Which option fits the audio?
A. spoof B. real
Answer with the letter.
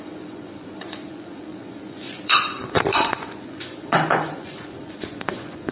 A